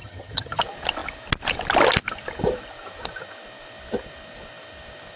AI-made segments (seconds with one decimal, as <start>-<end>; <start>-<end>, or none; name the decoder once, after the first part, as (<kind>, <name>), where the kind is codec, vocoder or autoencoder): 0.0-0.6 (vocoder, HiFi-GAN)